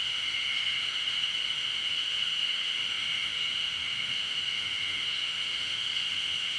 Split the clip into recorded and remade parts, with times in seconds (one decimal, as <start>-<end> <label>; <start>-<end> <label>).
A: 0.0-6.6 remade